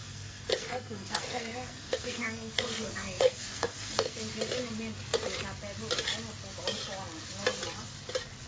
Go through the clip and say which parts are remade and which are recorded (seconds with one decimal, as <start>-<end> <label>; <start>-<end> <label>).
0.0-4.2 remade; 4.2-8.5 recorded